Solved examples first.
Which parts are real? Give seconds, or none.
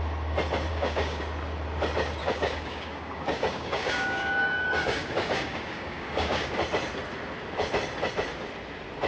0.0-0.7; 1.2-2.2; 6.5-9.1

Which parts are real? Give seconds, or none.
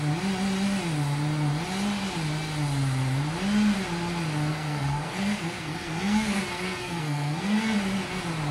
0.0-4.5; 7.8-8.5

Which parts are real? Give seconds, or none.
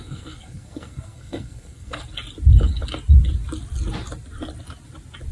2.0-5.3